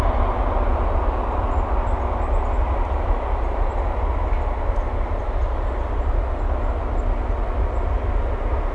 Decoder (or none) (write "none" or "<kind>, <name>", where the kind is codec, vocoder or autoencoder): none